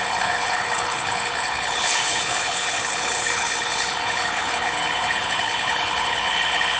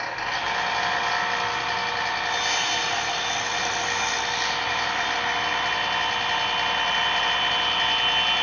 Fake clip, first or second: first